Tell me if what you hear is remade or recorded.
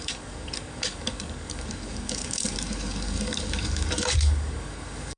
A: remade